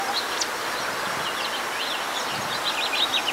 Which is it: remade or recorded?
recorded